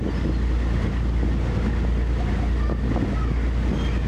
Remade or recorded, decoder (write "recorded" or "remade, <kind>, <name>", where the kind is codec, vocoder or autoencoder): recorded